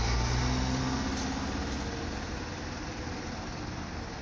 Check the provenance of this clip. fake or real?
real